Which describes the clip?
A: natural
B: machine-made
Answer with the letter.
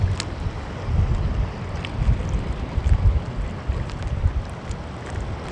A